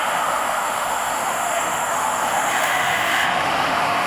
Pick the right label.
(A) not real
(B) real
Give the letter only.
A